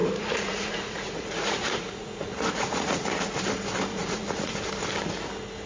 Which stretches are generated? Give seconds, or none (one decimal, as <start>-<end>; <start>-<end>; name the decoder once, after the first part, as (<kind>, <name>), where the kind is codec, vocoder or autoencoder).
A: 0.0-3.4 (vocoder, Vocos); 3.9-4.7